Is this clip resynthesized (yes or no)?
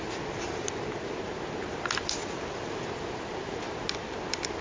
no